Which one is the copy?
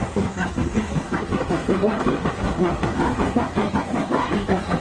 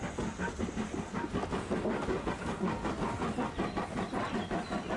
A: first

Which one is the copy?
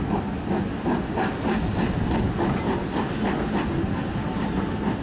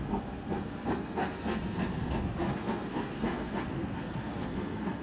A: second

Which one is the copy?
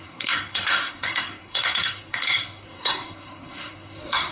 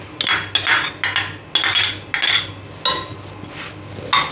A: first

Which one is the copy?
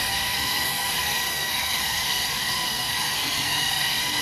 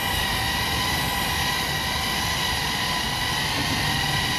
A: first